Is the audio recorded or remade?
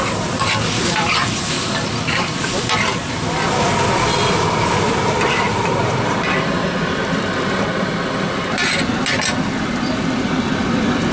remade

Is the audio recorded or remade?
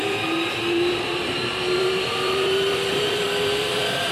remade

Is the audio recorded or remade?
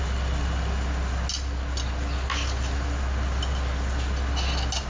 recorded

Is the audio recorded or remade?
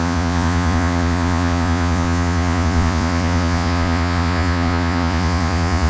remade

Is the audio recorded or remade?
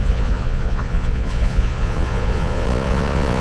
remade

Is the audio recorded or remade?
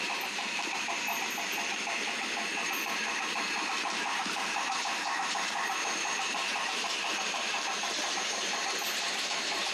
remade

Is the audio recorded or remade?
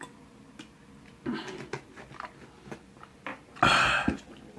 recorded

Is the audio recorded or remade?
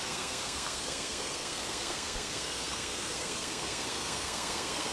remade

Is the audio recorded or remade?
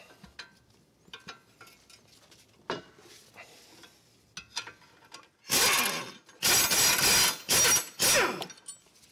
recorded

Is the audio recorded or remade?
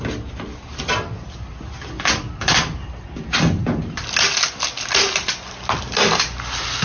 recorded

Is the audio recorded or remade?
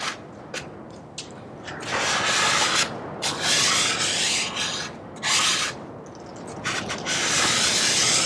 recorded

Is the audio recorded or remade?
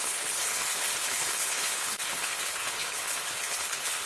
remade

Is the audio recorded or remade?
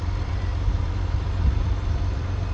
remade